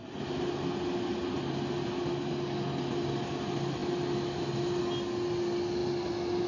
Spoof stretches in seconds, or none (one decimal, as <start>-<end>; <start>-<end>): none